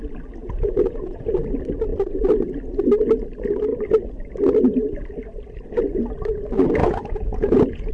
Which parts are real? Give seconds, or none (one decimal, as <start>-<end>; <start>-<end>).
0.0-0.4; 1.3-6.8

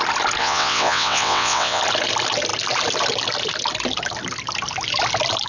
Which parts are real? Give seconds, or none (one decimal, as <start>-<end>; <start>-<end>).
0.0-0.4; 1.8-5.5

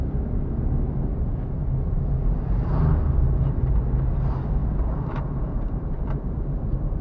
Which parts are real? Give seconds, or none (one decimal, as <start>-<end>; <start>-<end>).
0.0-4.6

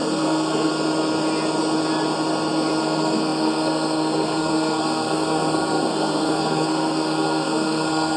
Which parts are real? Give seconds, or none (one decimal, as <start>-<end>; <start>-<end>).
0.7-2.8

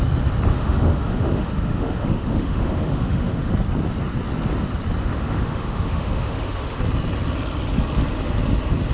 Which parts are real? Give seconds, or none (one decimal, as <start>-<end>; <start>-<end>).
0.0-0.5; 3.5-5.0; 6.8-8.9

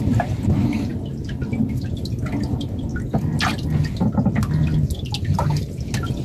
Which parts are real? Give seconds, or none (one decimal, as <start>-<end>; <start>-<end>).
0.0-6.2

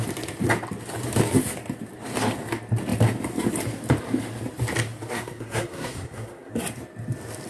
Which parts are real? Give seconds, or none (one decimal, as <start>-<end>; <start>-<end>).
0.0-5.1; 6.5-7.5